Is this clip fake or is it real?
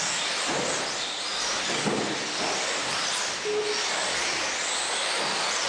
real